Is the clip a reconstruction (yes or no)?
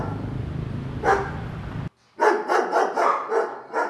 no